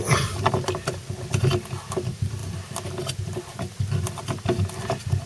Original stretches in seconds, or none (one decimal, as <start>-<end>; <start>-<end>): 0.0-5.3